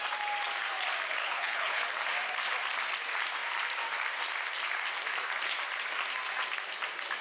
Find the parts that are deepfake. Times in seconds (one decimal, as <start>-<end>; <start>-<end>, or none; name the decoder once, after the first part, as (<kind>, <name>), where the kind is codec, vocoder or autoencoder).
1.2-1.8 (codec, HILCodec)